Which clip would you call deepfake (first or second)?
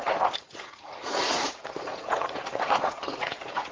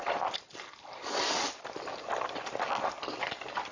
first